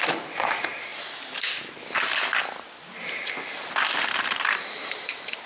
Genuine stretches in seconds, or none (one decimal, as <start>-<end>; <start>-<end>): 0.9-4.2